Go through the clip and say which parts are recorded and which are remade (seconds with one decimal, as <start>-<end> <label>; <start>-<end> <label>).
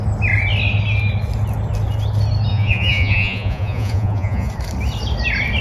0.0-2.5 recorded; 2.5-4.5 remade; 4.5-5.6 recorded